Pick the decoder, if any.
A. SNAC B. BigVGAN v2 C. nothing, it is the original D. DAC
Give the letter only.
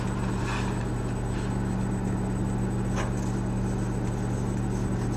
C